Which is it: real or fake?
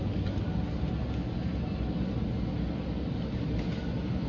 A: real